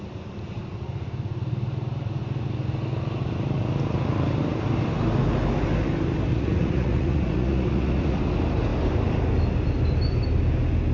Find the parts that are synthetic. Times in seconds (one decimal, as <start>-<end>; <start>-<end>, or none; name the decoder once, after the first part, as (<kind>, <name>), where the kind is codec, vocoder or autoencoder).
6.3-8.2 (vocoder, Vocos)

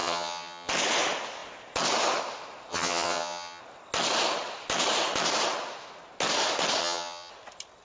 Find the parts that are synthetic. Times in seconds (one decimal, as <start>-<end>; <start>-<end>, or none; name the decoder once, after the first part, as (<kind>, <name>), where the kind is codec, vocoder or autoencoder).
0.0-0.7 (vocoder, HiFi-GAN); 2.7-3.6; 6.8-7.3

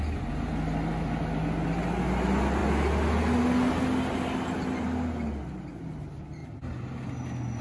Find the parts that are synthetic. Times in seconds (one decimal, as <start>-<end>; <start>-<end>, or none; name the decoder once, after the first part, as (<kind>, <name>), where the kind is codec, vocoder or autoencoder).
none

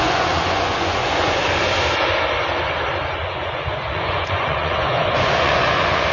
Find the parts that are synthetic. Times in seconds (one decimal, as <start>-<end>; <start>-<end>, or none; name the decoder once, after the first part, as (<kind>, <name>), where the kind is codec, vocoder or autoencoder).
0.0-1.4 (vocoder, Vocos); 3.2-6.1

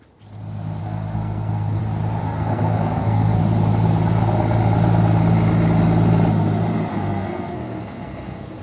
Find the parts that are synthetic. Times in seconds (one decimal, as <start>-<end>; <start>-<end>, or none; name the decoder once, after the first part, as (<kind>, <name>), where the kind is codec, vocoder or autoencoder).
0.8-1.8 (codec, SNAC); 2.2-3.4; 6.9-8.6

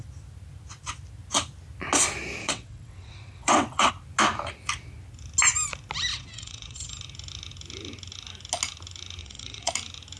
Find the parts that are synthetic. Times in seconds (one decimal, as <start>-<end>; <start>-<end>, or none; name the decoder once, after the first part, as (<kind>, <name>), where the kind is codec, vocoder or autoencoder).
2.4-3.9 (vocoder, WaveNeXt); 6.1-6.9; 9.2-9.7

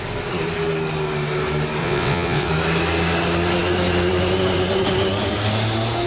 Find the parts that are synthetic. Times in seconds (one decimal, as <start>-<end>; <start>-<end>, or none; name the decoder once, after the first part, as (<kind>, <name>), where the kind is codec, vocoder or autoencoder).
1.8-2.5 (vocoder, WaveNeXt)